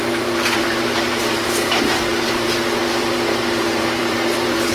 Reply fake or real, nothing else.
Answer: fake